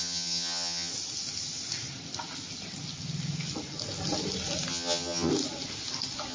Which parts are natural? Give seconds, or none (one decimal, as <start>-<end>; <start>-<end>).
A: 0.9-4.7; 5.3-6.3